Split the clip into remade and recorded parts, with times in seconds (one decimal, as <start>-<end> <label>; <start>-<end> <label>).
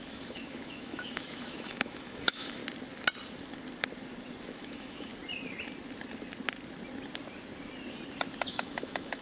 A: 0.0-2.6 remade; 2.6-4.4 recorded; 4.4-5.1 remade; 5.1-8.5 recorded; 8.5-9.2 remade